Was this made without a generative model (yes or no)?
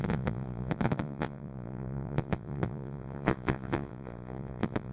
no